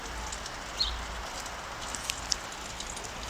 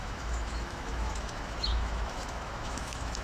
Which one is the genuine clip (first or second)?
first